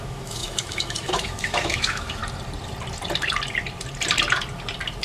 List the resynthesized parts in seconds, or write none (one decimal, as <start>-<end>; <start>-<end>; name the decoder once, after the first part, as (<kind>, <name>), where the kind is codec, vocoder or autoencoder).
0.0-2.2 (autoencoder, DAC-VAE)

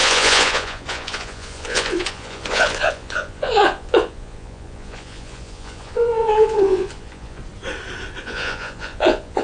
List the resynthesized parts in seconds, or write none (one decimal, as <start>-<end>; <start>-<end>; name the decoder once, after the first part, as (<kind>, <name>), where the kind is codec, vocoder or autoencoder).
0.0-7.4 (vocoder, Vocos); 8.2-9.4